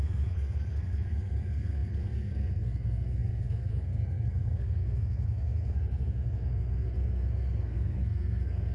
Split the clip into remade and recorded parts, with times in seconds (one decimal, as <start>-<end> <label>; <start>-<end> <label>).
0.0-8.7 remade